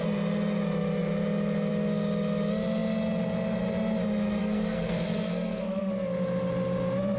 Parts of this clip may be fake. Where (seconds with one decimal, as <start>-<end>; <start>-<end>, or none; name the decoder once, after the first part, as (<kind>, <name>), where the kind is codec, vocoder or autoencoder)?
4.4-5.9 (codec, SNAC)